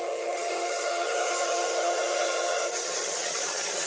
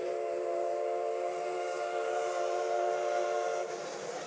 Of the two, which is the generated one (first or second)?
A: first